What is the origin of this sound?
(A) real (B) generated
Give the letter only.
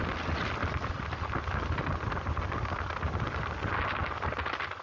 A